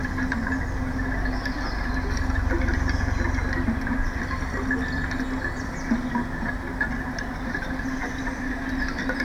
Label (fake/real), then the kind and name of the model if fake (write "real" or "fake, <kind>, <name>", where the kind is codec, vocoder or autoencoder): real